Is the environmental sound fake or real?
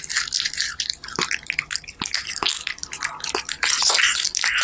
real